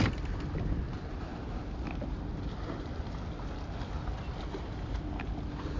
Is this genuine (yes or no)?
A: yes